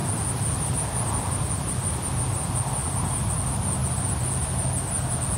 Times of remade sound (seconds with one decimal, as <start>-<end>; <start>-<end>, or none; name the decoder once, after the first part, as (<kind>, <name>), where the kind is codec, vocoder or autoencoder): 2.8-3.4 (vocoder, BigVGAN v2)